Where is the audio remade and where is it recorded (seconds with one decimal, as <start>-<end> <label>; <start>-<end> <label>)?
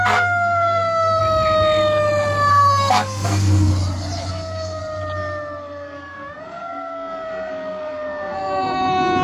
0.0-1.2 remade; 1.2-2.5 recorded; 2.5-3.7 remade; 3.7-4.3 recorded; 4.3-4.8 remade; 4.8-5.6 recorded; 5.6-9.2 remade